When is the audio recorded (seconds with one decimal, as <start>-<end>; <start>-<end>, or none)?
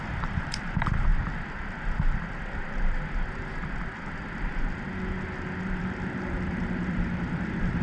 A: 1.1-5.6